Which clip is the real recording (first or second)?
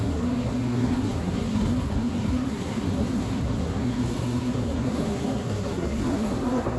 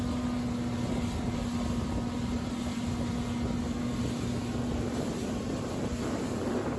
second